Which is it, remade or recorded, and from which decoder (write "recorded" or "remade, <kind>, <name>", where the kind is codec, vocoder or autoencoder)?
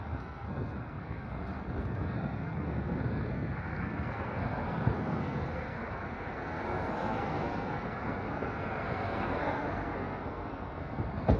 remade, codec, SNAC